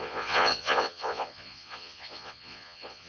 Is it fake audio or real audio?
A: fake